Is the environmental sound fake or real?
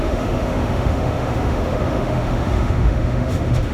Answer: fake